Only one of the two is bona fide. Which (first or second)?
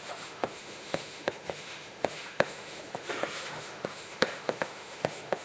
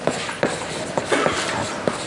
second